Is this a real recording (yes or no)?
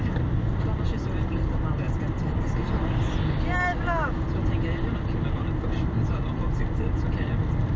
yes